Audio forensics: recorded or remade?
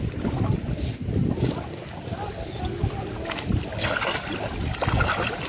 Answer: recorded